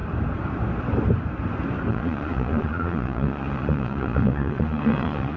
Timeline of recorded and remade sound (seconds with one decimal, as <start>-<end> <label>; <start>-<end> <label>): 0.0-1.9 recorded; 1.9-5.4 remade